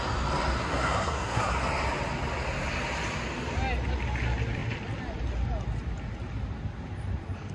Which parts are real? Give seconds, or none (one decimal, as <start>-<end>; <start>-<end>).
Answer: 0.0-0.6; 1.5-7.5